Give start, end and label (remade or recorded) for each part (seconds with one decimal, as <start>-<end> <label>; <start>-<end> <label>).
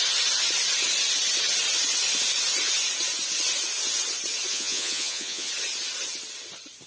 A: 0.0-4.5 recorded; 4.5-5.5 remade; 5.5-6.9 recorded